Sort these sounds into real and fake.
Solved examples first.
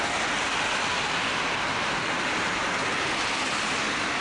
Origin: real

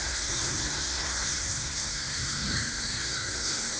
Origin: fake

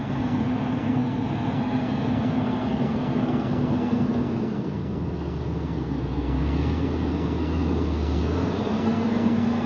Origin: fake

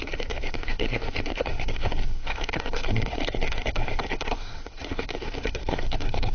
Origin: fake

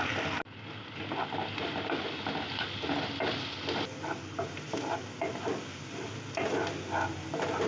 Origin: real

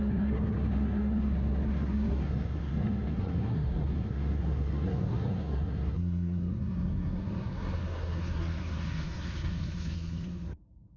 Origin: fake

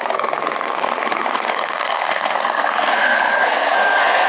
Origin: fake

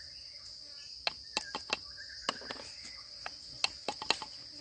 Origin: real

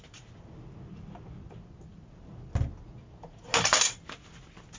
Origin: real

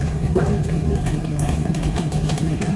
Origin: fake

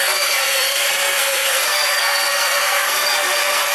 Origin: fake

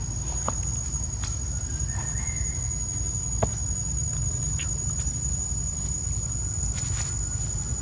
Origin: real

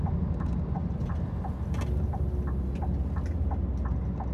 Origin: real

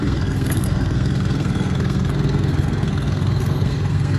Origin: fake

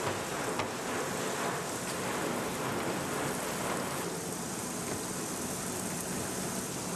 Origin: real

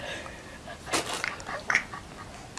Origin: real